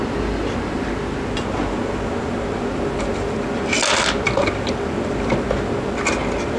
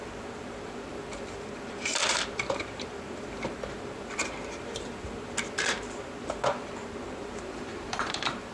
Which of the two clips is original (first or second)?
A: first